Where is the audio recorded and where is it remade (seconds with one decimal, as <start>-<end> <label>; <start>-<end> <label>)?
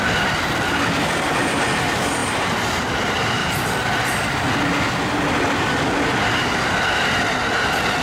0.0-2.2 recorded; 2.2-2.9 remade; 2.9-3.4 recorded; 3.4-4.5 remade; 4.5-8.0 recorded